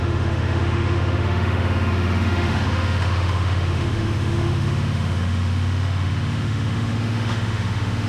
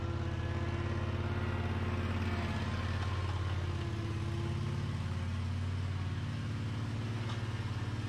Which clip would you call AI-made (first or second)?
first